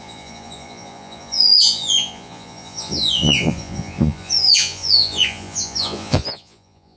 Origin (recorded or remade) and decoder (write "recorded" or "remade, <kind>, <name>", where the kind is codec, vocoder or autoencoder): remade, vocoder, Vocos